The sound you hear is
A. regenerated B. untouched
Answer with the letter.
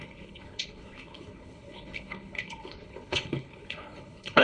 A